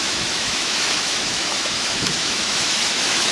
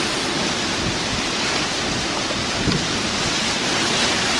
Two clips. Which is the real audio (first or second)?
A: second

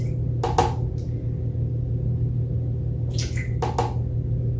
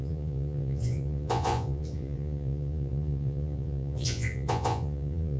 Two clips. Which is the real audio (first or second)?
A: first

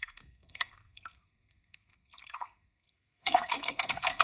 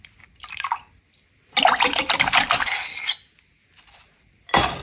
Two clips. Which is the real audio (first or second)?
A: second